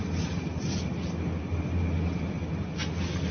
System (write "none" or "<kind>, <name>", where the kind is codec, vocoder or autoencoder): none